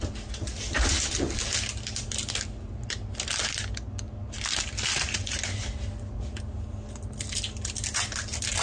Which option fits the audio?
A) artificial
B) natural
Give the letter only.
B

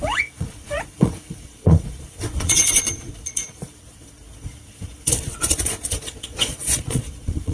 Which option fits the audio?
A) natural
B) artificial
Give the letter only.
B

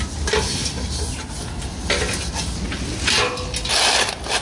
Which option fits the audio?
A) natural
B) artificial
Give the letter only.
A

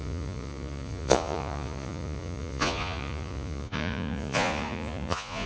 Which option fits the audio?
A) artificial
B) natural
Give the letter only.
A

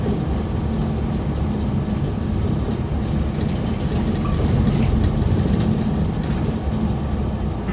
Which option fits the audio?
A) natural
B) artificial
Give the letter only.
A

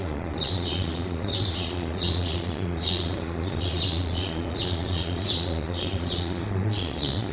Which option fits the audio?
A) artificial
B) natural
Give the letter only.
A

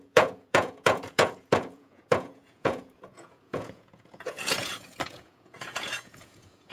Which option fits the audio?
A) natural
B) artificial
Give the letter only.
B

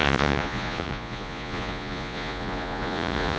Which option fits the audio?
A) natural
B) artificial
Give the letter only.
B